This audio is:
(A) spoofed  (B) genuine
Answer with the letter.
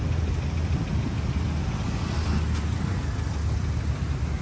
B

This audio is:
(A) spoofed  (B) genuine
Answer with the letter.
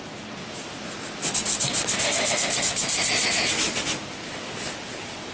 B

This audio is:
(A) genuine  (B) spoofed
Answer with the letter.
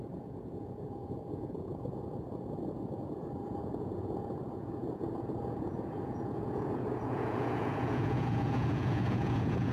B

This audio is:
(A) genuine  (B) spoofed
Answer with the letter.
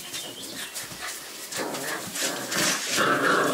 B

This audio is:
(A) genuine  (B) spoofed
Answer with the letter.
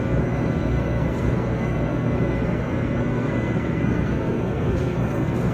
B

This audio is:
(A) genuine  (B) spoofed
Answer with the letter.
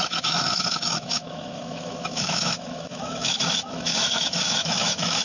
B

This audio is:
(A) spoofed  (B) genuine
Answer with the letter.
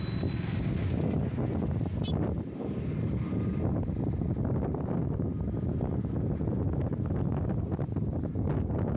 B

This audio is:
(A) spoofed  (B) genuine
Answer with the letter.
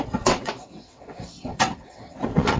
A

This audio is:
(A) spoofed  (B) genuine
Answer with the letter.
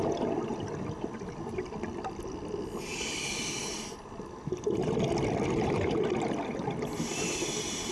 B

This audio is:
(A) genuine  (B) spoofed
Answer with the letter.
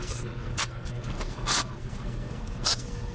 B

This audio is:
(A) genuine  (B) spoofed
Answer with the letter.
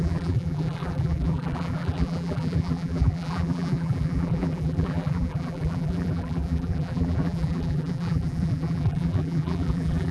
B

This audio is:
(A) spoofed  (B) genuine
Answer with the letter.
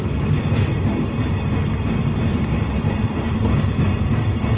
B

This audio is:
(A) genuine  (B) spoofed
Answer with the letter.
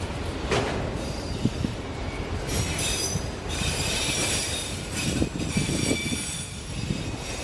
B